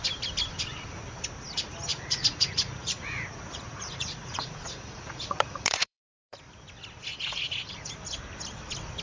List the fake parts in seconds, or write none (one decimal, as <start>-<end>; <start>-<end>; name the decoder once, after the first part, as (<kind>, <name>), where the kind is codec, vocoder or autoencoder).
1.9-6.4 (vocoder, Vocos); 7.1-7.9